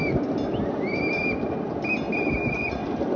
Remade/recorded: recorded